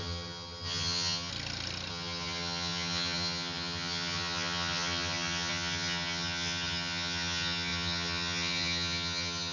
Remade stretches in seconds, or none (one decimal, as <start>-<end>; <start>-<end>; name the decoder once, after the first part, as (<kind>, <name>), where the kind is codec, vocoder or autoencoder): 0.0-1.3 (vocoder, HiFi-GAN); 1.9-9.5